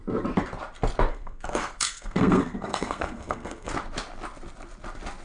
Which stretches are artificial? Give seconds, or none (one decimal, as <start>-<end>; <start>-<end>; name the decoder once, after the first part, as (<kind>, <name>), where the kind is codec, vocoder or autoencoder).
1.1-3.7 (codec, SNAC)